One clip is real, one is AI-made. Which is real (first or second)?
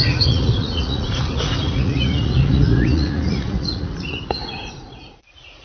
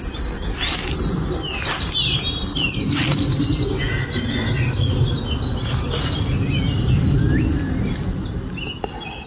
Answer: second